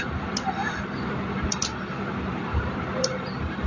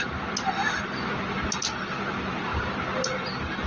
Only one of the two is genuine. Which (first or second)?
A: second